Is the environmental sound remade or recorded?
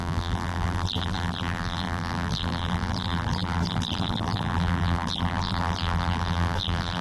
remade